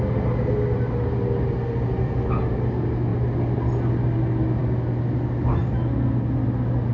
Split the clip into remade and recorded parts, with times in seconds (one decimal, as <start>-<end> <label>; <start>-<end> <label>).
0.0-6.9 recorded